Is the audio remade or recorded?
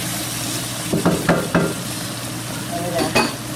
recorded